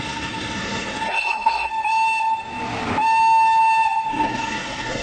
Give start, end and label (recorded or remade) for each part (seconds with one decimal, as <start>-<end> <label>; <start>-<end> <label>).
0.0-1.7 remade; 1.7-4.1 recorded; 4.1-5.0 remade